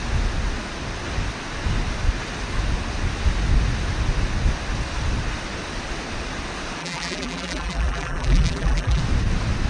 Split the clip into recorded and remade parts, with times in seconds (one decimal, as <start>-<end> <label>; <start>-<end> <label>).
0.0-6.8 recorded; 6.8-9.0 remade; 9.0-9.7 recorded